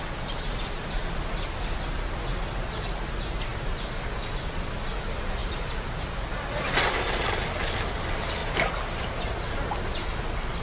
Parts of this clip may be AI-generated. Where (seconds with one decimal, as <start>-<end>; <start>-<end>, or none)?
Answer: 5.4-6.0; 8.4-9.7